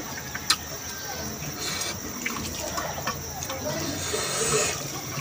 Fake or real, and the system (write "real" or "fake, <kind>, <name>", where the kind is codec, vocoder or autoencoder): real